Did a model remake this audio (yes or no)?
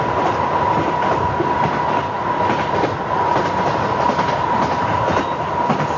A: no